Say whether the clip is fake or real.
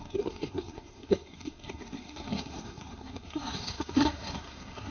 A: fake